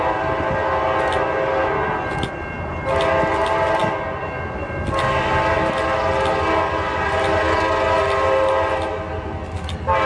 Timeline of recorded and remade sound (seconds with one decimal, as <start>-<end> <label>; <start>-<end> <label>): 0.0-10.1 recorded